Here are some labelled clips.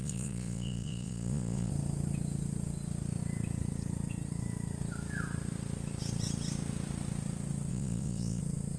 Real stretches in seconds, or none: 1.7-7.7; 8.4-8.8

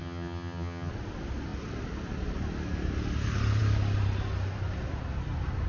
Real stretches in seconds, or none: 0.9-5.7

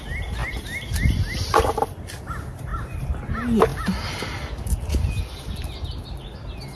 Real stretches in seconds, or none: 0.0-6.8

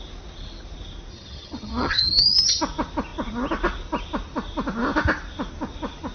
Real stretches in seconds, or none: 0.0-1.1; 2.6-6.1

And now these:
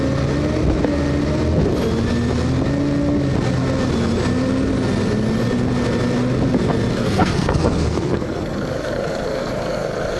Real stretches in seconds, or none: 0.0-6.9